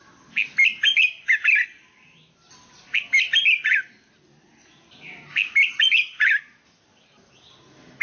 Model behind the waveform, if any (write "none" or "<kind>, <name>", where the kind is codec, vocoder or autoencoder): none